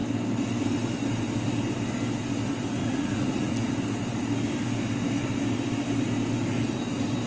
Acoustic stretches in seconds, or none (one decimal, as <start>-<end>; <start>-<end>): 0.0-2.8; 3.7-7.3